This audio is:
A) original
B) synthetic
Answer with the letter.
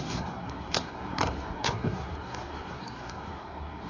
B